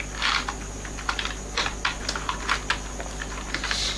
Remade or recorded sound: recorded